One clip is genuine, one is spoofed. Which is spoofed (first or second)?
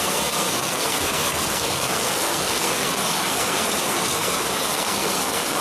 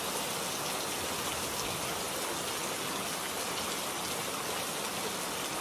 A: first